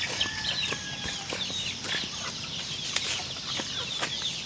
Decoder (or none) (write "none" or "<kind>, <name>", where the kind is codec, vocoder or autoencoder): none